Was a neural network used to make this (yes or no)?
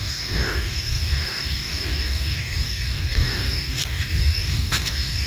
yes